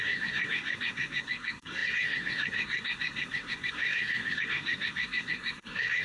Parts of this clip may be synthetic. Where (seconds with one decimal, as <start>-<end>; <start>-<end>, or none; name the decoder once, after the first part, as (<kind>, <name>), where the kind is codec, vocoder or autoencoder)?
0.0-6.0 (codec, SNAC)